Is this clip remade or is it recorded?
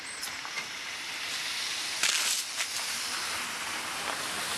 remade